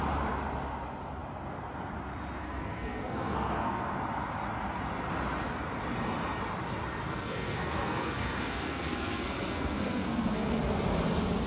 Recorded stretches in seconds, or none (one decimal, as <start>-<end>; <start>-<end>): 0.0-2.4; 3.9-7.1; 10.6-11.5